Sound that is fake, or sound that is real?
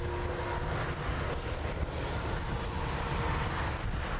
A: real